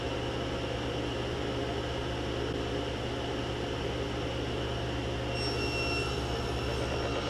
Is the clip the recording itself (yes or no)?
yes